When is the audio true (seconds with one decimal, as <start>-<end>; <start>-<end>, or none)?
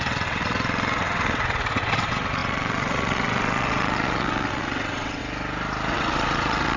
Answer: 5.2-5.9